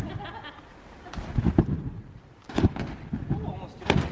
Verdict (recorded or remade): recorded